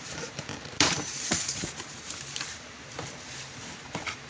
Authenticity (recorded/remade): remade